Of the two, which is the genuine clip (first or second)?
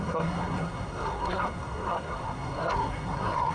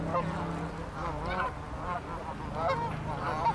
second